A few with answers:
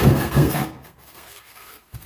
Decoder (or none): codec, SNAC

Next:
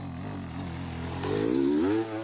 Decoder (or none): none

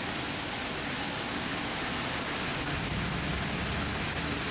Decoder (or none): none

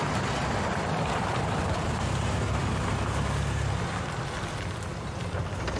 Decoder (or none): none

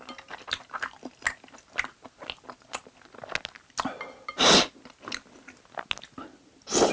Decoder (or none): none